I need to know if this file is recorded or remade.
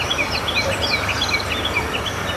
recorded